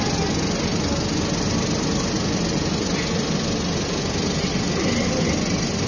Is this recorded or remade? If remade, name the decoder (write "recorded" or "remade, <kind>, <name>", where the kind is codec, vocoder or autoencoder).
recorded